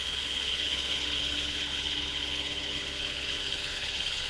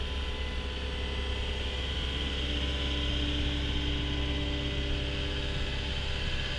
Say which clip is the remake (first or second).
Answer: first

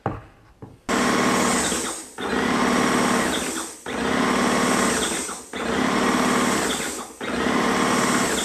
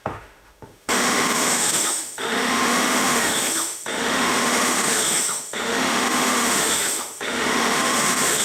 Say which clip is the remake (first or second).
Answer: second